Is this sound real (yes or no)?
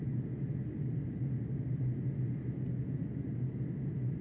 yes